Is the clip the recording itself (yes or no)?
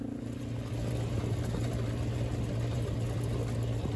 yes